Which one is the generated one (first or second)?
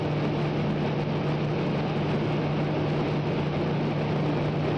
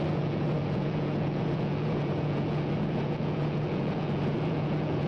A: second